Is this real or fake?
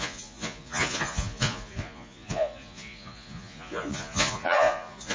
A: fake